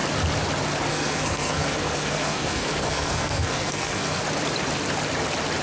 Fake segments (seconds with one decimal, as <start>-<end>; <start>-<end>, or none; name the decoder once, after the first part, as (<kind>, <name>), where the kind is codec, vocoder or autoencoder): 0.9-4.2 (codec, SNAC)